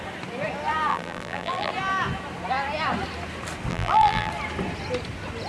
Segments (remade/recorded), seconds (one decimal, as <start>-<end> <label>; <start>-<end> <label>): 0.0-0.9 recorded; 0.9-1.7 remade; 1.7-3.7 recorded; 3.7-4.3 remade; 4.3-5.5 recorded